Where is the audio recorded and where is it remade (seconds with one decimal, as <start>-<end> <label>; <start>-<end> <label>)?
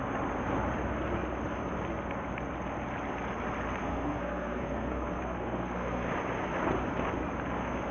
0.0-3.8 recorded; 3.8-6.1 remade; 6.1-7.9 recorded